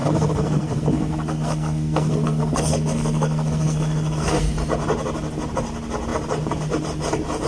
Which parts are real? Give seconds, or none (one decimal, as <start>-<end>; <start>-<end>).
4.5-7.5